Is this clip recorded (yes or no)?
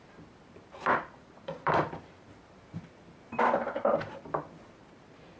no